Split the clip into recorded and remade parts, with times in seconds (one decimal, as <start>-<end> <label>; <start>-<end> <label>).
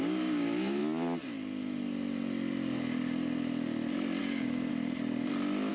0.0-0.8 remade; 0.8-4.2 recorded; 4.2-4.7 remade; 4.7-5.7 recorded